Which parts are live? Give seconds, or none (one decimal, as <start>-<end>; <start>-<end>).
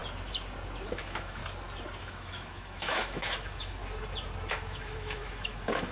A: 0.0-0.9; 1.4-2.0; 3.8-4.5